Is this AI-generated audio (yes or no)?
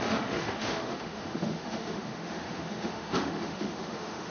yes